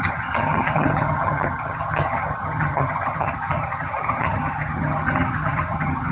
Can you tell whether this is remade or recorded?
remade